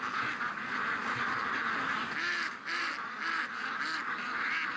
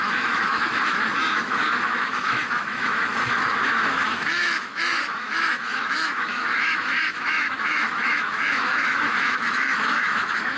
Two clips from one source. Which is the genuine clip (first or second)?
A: first